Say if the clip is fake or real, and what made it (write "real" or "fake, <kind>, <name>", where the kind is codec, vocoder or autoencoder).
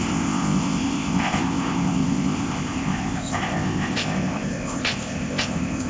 fake, codec, ZipCodec